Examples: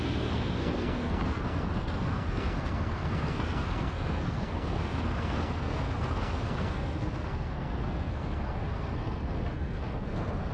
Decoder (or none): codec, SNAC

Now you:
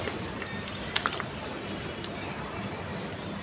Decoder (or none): none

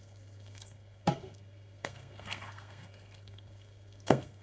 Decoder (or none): codec, SNAC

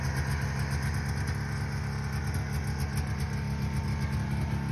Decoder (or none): none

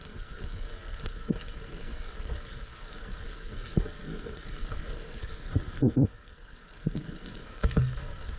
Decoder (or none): codec, SNAC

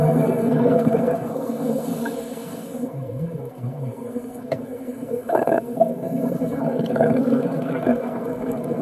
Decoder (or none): codec, SNAC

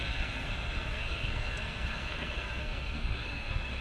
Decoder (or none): codec, SNAC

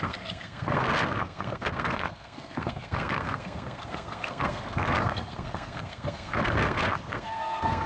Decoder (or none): codec, SNAC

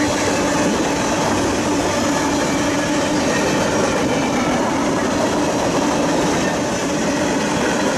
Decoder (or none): none